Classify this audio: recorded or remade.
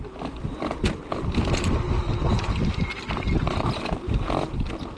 recorded